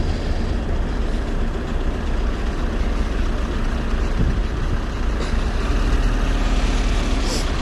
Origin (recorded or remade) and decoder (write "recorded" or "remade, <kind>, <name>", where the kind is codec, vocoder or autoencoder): recorded